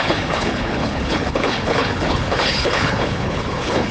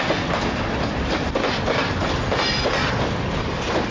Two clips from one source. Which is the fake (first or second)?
first